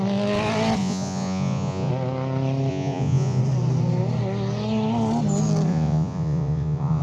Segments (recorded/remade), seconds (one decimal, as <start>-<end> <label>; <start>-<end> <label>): 0.0-0.8 recorded; 0.8-1.9 remade; 1.9-2.7 recorded; 2.7-3.4 remade; 3.4-5.7 recorded; 5.7-7.0 remade